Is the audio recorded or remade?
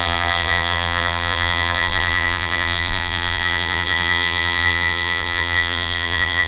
remade